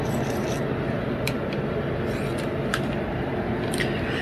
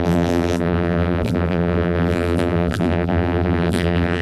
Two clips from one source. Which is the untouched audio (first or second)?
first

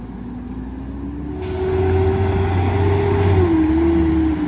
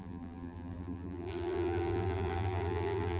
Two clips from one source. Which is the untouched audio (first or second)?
first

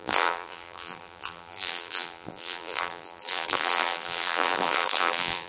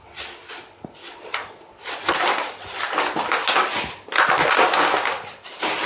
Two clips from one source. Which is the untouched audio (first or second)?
second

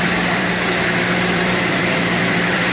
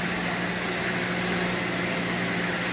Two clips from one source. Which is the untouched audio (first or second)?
second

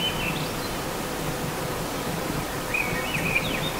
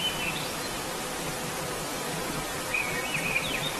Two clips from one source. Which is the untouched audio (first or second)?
first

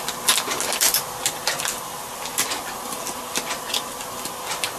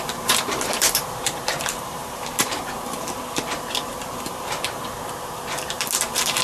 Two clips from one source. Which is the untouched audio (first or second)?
first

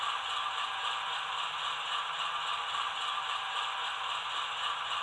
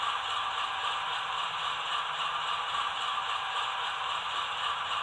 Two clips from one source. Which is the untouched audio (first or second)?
first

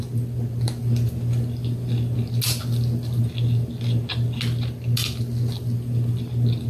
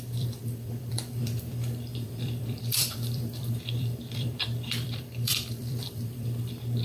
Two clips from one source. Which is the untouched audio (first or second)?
first